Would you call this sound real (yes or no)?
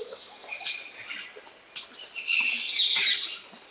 yes